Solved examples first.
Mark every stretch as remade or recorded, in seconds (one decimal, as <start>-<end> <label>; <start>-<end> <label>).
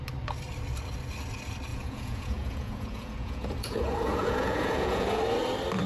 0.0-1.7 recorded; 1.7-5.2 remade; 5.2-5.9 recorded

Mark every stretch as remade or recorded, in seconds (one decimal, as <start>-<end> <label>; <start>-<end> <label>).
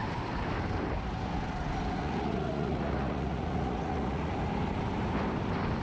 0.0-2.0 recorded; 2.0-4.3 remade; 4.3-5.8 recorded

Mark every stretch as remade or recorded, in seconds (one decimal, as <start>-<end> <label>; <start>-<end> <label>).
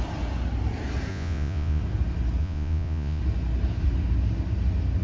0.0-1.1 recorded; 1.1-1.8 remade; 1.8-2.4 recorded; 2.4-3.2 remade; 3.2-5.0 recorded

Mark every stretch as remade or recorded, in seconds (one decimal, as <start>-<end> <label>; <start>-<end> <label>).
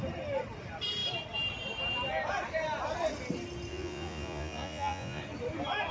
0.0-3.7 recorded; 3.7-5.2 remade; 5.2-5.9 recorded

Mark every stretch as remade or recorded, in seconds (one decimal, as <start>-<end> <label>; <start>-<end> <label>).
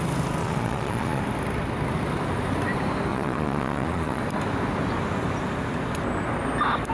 0.0-0.4 recorded; 0.4-1.2 remade; 1.2-3.1 recorded; 3.1-4.2 remade; 4.2-6.9 recorded